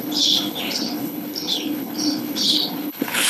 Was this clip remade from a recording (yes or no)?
yes